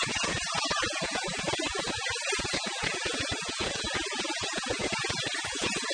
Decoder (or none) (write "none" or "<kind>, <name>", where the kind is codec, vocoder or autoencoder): vocoder, Vocos